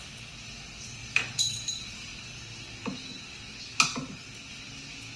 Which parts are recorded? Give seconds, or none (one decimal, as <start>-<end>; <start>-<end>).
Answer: 0.0-1.0; 2.2-3.9; 4.5-5.2